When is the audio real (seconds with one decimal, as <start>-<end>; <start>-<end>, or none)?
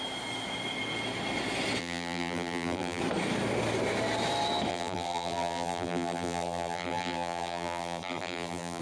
0.0-1.8; 3.0-4.7